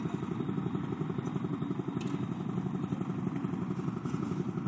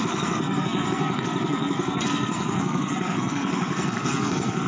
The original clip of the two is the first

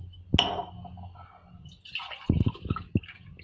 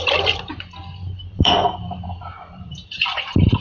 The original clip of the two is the first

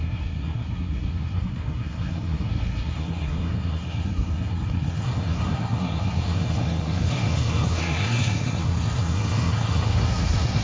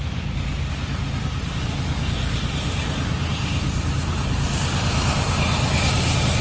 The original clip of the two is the second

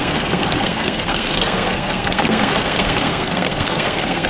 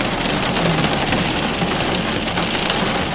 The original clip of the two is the second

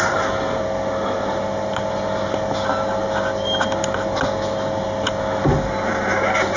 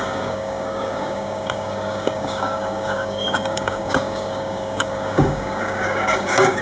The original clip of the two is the first